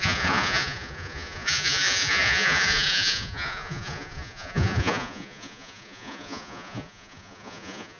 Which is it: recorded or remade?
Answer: remade